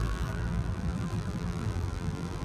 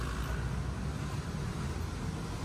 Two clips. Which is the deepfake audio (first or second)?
first